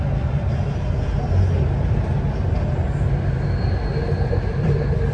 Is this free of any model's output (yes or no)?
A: yes